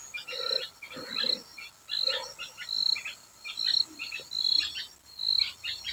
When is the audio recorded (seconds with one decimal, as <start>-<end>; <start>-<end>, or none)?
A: 0.0-5.9